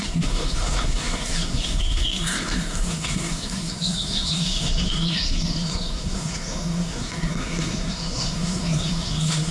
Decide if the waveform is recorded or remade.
remade